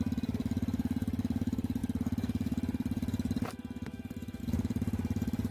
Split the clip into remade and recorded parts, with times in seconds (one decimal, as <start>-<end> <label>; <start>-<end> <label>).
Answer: 0.0-5.5 recorded